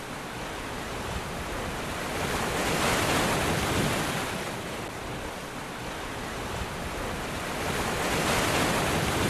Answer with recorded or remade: recorded